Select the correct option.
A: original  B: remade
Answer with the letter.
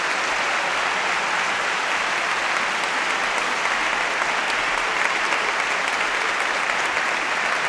A